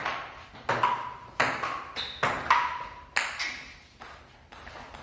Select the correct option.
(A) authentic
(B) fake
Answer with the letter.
A